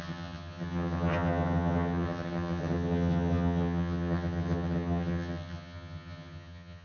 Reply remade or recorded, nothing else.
remade